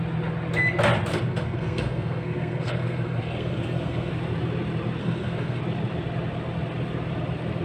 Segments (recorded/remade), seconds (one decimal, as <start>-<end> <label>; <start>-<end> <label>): 0.0-1.1 recorded; 1.1-4.1 remade; 4.1-5.0 recorded; 5.0-5.6 remade; 5.6-7.6 recorded